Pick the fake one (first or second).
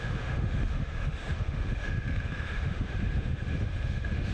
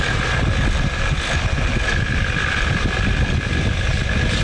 first